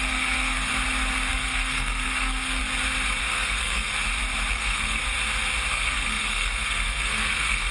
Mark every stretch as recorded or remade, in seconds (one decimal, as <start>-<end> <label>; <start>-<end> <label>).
0.0-0.7 remade; 0.7-1.3 recorded; 1.3-2.6 remade; 2.6-3.2 recorded; 3.2-3.9 remade; 3.9-4.5 recorded; 4.5-5.0 remade; 5.0-5.7 recorded; 5.7-7.7 remade